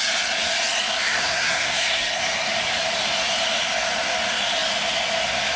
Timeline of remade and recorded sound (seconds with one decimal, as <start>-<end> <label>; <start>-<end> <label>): 0.0-1.0 recorded; 1.0-2.2 remade; 2.2-5.6 recorded